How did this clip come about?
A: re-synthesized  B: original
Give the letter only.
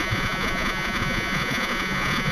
A